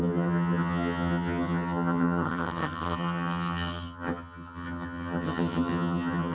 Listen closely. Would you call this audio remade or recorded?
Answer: remade